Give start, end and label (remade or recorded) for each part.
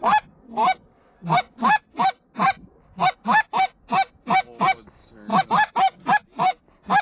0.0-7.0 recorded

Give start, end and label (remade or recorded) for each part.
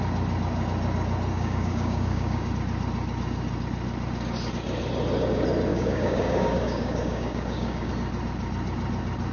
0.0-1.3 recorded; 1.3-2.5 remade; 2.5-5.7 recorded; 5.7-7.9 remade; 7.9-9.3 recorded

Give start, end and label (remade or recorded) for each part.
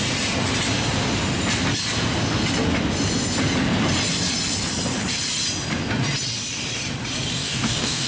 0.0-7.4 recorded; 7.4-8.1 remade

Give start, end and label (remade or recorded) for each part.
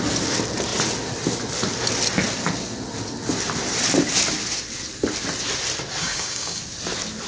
0.0-6.0 recorded; 6.0-6.6 remade; 6.6-7.3 recorded